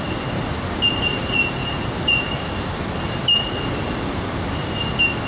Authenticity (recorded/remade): recorded